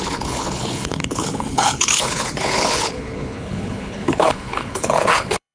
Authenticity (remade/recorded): remade